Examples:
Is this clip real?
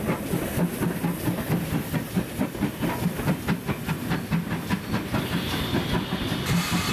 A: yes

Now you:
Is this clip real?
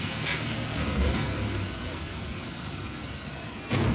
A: no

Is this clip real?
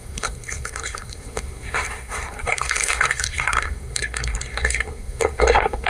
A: no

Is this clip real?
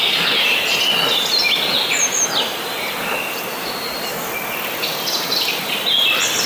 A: yes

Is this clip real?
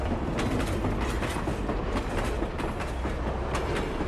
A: yes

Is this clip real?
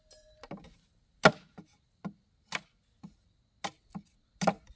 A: yes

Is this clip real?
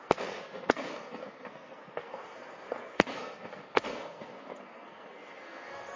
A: no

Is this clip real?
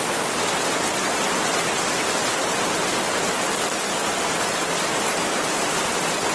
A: yes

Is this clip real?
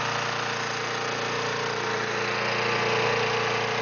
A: yes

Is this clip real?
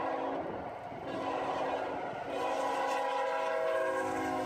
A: yes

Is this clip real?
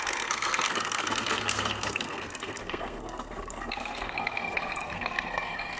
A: no